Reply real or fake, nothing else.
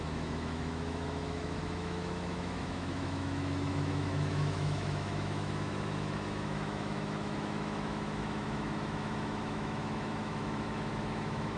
fake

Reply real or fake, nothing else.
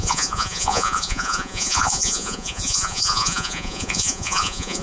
fake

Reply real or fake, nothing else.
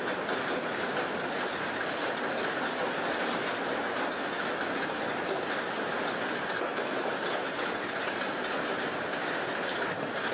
real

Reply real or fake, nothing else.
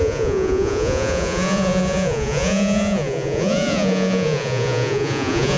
fake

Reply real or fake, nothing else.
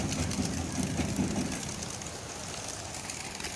real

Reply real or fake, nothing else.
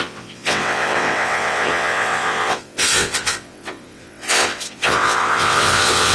fake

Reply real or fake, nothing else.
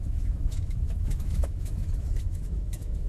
fake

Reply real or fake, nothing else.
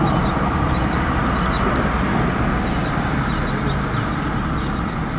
real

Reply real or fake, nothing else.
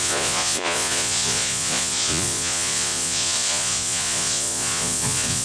fake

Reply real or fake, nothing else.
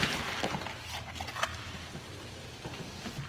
real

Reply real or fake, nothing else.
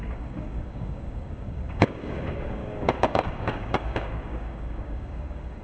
fake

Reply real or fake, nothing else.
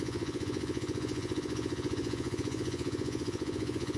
fake